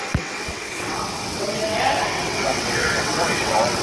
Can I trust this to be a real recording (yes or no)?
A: no